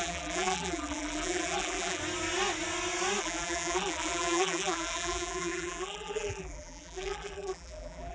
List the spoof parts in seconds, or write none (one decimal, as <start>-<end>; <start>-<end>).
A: 0.0-2.0; 3.2-8.1